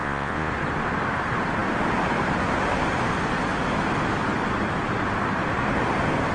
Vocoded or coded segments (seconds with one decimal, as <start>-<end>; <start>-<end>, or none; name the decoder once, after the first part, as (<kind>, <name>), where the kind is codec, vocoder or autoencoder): 0.0-0.5 (vocoder, Vocos)